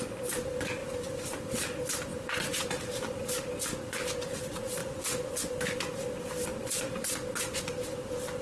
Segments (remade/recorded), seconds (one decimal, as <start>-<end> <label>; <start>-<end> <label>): 0.0-4.8 recorded; 4.8-5.4 remade; 5.4-8.4 recorded